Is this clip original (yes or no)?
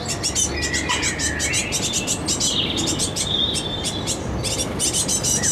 yes